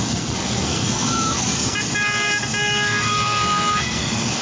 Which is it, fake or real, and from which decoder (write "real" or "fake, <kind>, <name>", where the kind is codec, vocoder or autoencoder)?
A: fake, codec, SNAC